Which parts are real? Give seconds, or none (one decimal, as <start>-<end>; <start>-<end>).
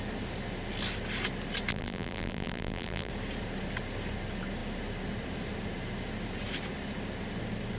0.0-1.7; 3.1-7.8